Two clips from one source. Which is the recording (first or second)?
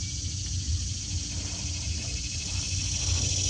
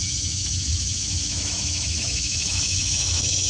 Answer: first